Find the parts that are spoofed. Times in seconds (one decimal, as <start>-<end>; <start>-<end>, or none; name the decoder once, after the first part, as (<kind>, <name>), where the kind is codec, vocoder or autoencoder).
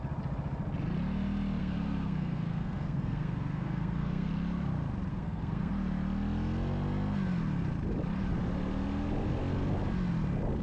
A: 1.6-4.3 (codec, SNAC); 5.1-5.7